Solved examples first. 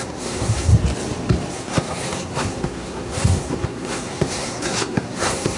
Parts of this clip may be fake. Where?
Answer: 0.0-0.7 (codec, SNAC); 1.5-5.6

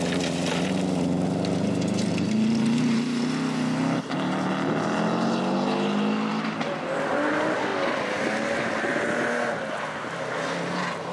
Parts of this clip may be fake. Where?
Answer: none